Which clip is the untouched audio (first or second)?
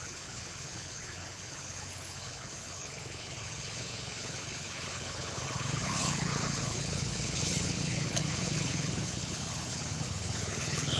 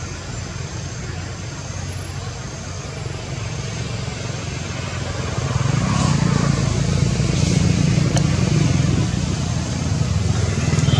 second